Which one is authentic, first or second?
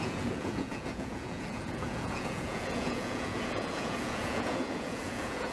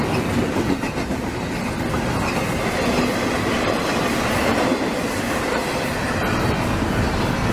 second